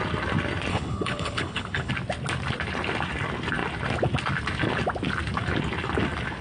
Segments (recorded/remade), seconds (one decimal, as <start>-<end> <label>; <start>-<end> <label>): 0.0-0.7 recorded; 0.7-1.9 remade; 1.9-6.4 recorded